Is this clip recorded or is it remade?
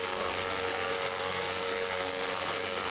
remade